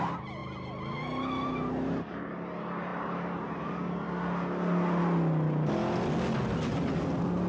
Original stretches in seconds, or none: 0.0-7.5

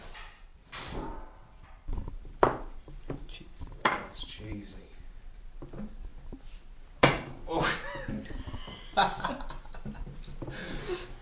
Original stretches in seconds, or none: 0.0-0.5; 5.2-11.2

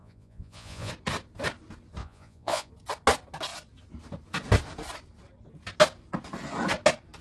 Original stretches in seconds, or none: 0.9-2.0; 2.7-7.2

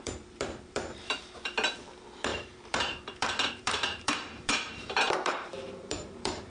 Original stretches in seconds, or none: none